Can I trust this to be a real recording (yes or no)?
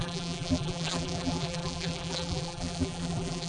no